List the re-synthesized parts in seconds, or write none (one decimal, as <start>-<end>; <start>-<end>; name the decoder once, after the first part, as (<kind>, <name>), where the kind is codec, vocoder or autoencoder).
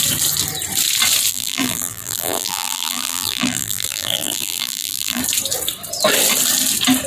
1.3-5.2 (vocoder, BigVGAN v2)